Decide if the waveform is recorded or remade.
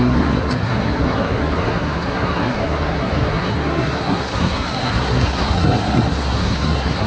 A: remade